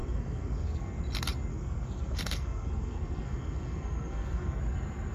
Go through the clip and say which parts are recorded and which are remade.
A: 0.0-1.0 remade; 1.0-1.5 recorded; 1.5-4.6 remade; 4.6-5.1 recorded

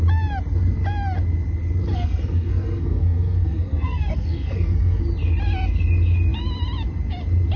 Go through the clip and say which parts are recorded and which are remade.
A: 0.0-1.9 recorded; 1.9-5.0 remade; 5.0-7.6 recorded

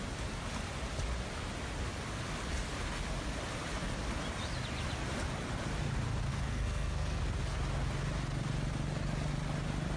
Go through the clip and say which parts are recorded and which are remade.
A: 0.0-6.3 recorded; 6.3-7.2 remade; 7.2-10.0 recorded

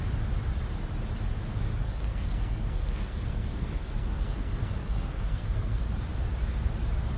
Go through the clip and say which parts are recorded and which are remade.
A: 0.0-1.5 recorded; 1.5-5.8 remade; 5.8-7.2 recorded